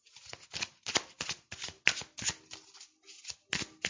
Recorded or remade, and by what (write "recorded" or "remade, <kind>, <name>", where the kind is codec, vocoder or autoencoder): recorded